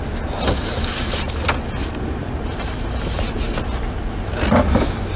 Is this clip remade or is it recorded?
recorded